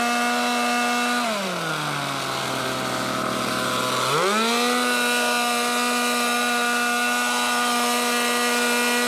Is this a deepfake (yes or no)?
no